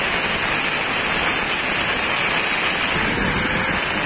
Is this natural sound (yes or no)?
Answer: yes